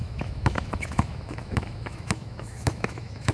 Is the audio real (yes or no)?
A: no